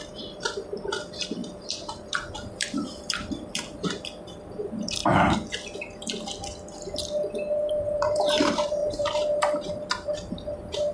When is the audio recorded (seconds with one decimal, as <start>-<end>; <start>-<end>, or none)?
5.0-7.7